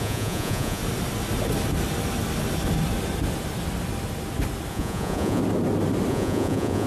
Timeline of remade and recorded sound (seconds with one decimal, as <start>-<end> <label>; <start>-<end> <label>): 0.0-0.8 remade; 0.8-4.7 recorded; 4.7-5.4 remade; 5.4-6.1 recorded; 6.1-6.9 remade

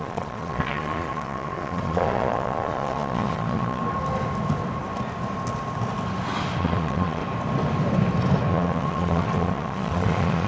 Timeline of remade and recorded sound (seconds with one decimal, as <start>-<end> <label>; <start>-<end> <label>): 0.0-3.8 remade; 3.8-6.6 recorded; 6.6-7.2 remade; 7.2-8.5 recorded; 8.5-10.5 remade

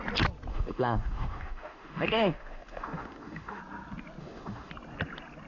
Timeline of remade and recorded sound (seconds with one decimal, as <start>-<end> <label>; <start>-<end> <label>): 0.0-0.5 recorded; 0.5-3.6 remade; 3.6-4.2 recorded; 4.2-4.7 remade; 4.7-5.5 recorded

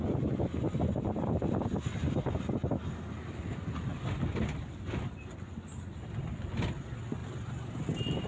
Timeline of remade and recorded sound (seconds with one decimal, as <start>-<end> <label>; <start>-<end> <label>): 0.0-7.2 recorded; 7.2-7.8 remade; 7.8-8.3 recorded

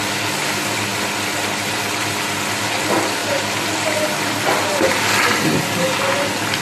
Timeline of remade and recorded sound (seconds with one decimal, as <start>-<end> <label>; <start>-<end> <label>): 0.0-3.2 recorded; 3.2-5.1 remade; 5.1-6.6 recorded

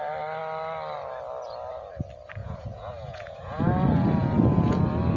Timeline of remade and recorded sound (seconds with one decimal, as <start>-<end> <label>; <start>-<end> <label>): 0.0-2.4 recorded; 2.4-4.8 remade; 4.8-5.2 recorded